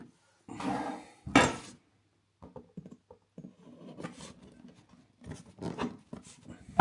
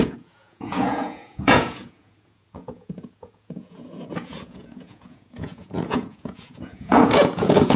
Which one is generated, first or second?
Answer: second